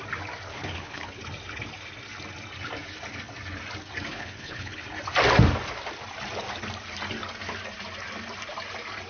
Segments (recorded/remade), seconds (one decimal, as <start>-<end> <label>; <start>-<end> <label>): 0.0-0.5 recorded; 0.5-1.2 remade; 1.2-4.1 recorded; 4.1-4.8 remade; 4.8-9.1 recorded

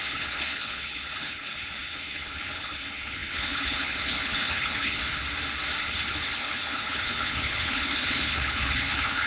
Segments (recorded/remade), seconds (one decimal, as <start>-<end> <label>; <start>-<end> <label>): 0.0-5.0 remade; 5.0-5.8 recorded; 5.8-9.3 remade

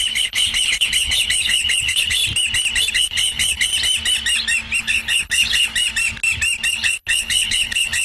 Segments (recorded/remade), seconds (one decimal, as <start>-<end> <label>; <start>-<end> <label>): 0.0-2.2 remade; 2.2-2.9 recorded; 2.9-3.7 remade; 3.7-4.8 recorded; 4.8-5.7 remade; 5.7-6.7 recorded; 6.7-8.0 remade

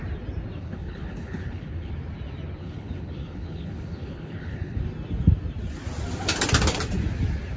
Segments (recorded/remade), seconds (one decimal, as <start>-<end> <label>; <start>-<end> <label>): 0.0-0.6 recorded; 0.6-1.9 remade; 1.9-2.6 recorded; 2.6-4.8 remade; 4.8-7.6 recorded

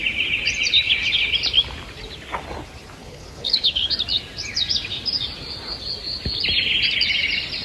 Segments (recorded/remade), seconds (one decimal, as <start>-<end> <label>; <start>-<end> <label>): 0.0-3.0 recorded; 3.0-3.9 remade; 3.9-7.6 recorded

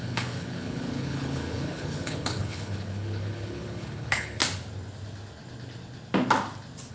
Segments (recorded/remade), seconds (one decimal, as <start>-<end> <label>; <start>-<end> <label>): 0.0-4.4 remade; 4.4-6.9 recorded

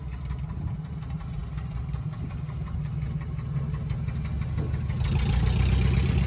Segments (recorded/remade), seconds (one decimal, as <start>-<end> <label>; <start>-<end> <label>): 0.0-6.3 recorded